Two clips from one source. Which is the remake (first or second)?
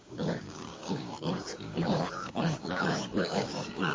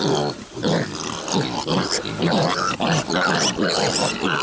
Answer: first